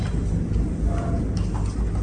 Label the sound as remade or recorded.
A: recorded